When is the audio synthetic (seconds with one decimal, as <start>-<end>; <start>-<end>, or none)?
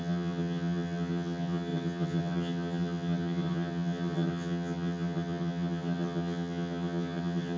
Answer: 0.0-7.6